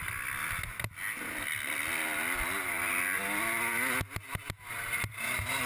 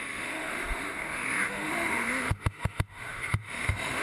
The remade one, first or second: second